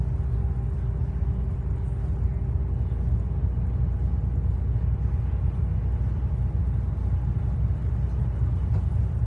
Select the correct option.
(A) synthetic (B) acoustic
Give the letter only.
B